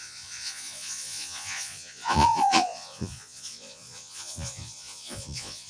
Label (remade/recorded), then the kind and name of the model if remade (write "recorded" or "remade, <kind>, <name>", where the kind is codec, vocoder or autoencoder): remade, vocoder, Vocos